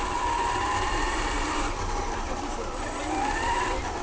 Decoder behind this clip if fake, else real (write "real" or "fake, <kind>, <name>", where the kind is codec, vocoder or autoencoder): fake, vocoder, BigVGAN v2